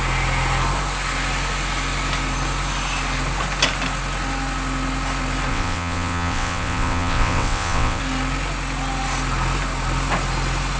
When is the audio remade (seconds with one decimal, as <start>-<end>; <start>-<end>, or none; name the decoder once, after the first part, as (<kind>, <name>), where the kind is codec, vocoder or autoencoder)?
5.5-8.0 (vocoder, WaveNeXt)